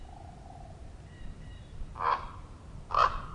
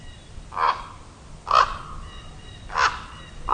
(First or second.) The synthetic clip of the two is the first